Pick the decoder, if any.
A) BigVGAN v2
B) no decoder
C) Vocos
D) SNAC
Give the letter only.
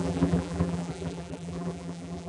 A